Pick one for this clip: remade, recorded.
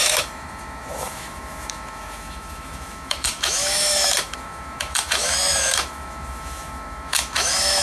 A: remade